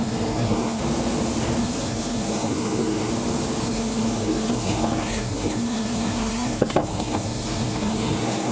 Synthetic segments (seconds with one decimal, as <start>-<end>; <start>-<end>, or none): 0.0-0.8; 1.6-3.1; 3.6-8.5